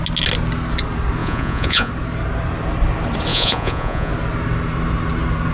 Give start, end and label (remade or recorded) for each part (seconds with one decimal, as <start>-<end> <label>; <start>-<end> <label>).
0.0-1.2 recorded; 1.2-1.9 remade; 1.9-3.3 recorded; 3.3-4.1 remade; 4.1-5.5 recorded